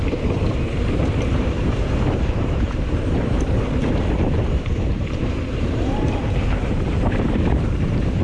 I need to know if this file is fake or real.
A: fake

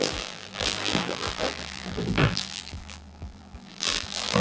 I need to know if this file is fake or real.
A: fake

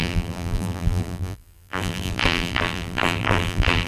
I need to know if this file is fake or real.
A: fake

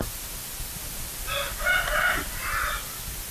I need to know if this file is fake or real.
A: fake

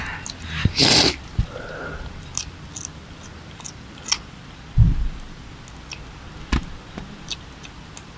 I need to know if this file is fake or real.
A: real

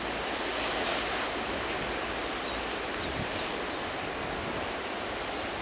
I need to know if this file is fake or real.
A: real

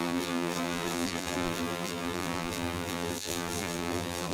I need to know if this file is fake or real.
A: fake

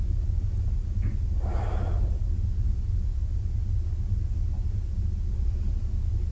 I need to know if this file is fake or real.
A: real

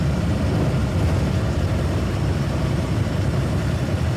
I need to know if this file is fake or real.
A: fake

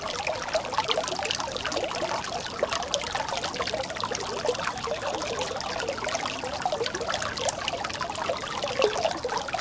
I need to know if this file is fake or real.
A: real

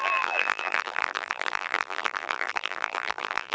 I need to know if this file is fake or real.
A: fake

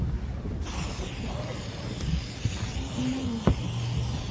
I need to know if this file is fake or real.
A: real